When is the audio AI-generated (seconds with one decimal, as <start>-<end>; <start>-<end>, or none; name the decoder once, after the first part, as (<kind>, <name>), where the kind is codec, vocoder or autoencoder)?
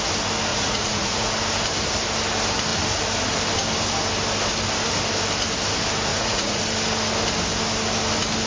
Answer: 0.5-1.3 (vocoder, Vocos); 6.1-6.6